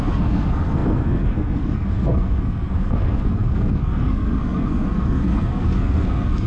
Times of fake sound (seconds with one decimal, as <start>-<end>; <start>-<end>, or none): 0.0-6.5